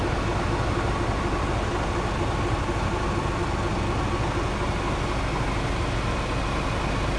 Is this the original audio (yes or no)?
yes